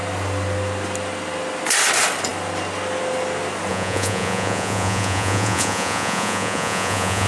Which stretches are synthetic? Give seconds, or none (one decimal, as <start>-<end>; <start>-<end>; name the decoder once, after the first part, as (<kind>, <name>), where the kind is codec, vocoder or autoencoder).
3.7-7.3 (vocoder, Vocos)